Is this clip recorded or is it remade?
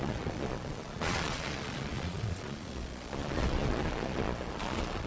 remade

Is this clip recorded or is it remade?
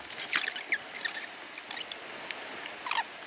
recorded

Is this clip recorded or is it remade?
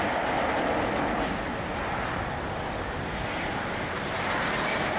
recorded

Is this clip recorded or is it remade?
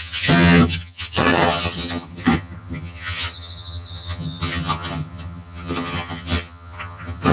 remade